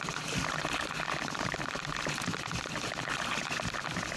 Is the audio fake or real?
real